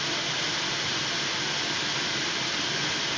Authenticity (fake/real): real